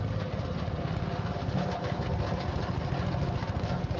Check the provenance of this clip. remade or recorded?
recorded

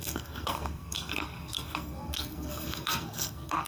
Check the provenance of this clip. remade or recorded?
remade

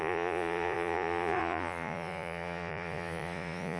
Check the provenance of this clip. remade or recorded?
remade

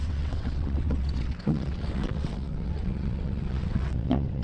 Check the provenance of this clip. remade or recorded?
remade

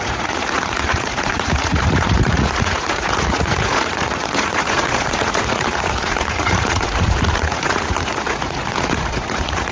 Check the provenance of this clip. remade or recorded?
remade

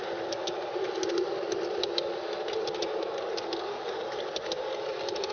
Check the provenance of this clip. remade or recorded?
recorded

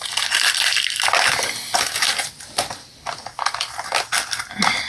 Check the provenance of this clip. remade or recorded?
recorded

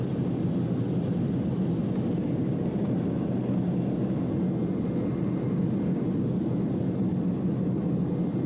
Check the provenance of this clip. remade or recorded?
recorded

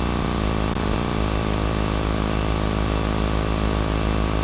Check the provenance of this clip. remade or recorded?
recorded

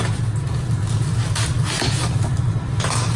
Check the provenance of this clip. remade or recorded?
recorded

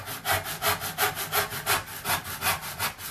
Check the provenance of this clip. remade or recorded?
recorded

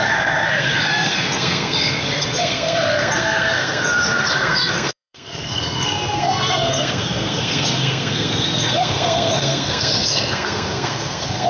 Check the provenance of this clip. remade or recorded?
remade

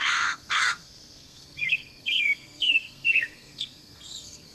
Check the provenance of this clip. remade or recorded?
remade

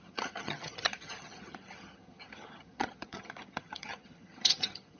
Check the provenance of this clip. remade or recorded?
remade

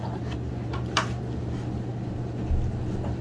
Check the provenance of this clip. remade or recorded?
recorded